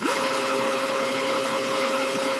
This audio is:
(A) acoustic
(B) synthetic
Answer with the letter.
B